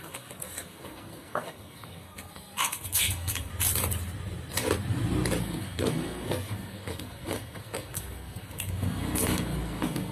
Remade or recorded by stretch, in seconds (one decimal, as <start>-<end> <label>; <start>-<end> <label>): 0.0-3.5 remade; 3.5-5.4 recorded; 5.4-10.1 remade